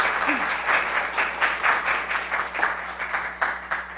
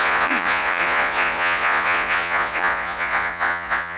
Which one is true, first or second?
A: first